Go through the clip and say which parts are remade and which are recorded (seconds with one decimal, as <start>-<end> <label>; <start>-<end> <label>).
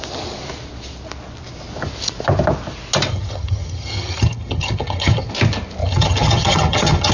0.0-3.1 recorded; 3.1-5.3 remade; 5.3-5.8 recorded; 5.8-7.1 remade